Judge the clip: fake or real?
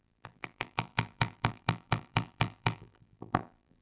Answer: fake